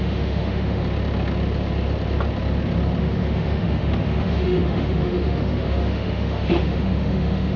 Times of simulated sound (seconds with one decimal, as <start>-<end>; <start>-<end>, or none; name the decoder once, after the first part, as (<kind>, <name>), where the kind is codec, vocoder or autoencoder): 0.0-0.8 (autoencoder, DAC-VAE); 3.0-7.6